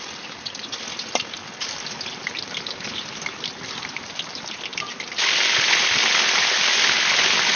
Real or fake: real